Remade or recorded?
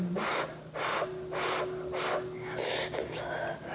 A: recorded